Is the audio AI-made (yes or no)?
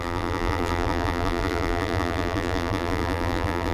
yes